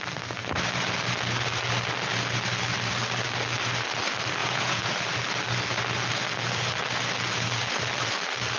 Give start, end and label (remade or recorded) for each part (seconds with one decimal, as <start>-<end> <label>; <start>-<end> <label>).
0.0-4.4 recorded; 4.4-4.9 remade; 4.9-8.6 recorded